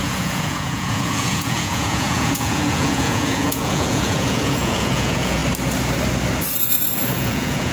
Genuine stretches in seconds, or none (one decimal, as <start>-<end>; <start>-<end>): 5.4-6.6